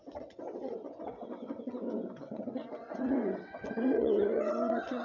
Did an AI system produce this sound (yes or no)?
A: yes